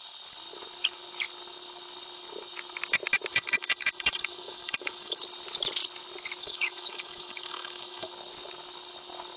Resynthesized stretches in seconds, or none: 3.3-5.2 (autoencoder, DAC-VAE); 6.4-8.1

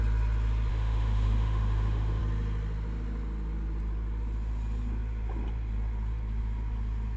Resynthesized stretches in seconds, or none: 0.7-2.2 (autoencoder, DAC-VAE)